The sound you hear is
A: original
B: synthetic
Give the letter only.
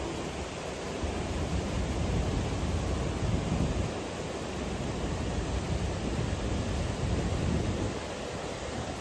A